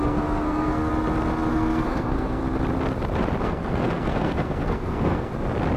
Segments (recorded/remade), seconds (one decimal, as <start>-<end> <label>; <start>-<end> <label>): 0.0-0.9 remade; 0.9-1.5 recorded; 1.5-2.4 remade; 2.4-3.4 recorded; 3.4-5.3 remade; 5.3-5.8 recorded